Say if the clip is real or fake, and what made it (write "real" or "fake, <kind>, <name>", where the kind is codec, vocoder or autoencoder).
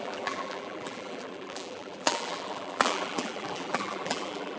fake, vocoder, BigVGAN v2